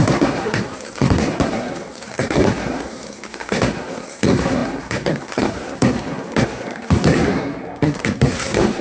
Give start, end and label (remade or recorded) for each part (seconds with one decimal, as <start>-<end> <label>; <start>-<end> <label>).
0.0-8.8 remade